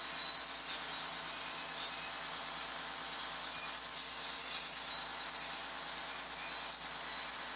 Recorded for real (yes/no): yes